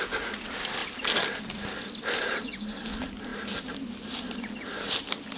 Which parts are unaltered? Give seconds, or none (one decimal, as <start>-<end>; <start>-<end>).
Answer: 0.0-5.4